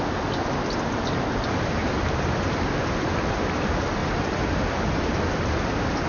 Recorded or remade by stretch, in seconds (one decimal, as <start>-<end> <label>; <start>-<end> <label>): 0.0-4.0 remade; 4.0-6.1 recorded